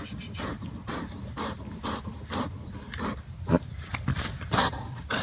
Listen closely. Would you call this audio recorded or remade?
recorded